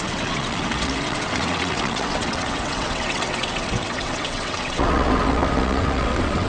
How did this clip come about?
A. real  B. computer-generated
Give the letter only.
B